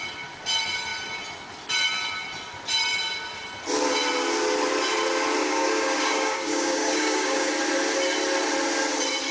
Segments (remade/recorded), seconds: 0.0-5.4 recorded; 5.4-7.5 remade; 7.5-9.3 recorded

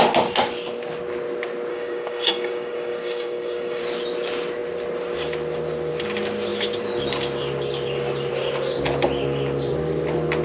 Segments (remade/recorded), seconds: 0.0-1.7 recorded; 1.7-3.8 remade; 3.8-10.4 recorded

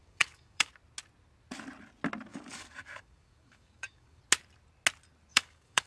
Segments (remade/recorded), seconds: 0.0-0.7 remade; 0.7-2.3 recorded; 2.3-4.2 remade; 4.2-5.3 recorded; 5.3-5.9 remade

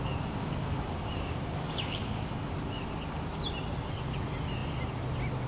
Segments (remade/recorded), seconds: 0.0-0.4 recorded; 0.4-2.3 remade; 2.3-5.5 recorded

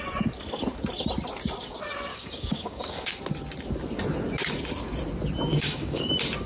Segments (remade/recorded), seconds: 0.0-2.1 recorded; 2.1-3.1 remade; 3.1-5.5 recorded; 5.5-6.1 remade; 6.1-6.5 recorded

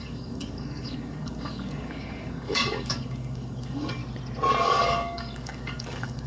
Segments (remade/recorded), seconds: 0.0-4.0 remade; 4.0-4.6 recorded; 4.6-6.3 remade